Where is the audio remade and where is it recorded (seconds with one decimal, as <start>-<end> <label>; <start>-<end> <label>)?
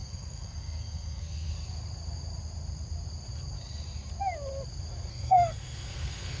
0.0-1.5 remade; 1.5-5.1 recorded; 5.1-6.4 remade